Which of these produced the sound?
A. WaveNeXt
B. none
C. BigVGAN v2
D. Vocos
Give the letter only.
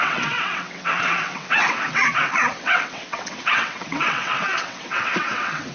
A